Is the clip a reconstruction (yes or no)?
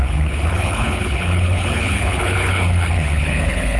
yes